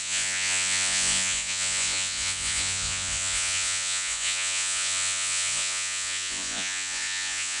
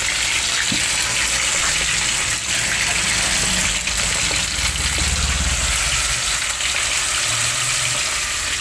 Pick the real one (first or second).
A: second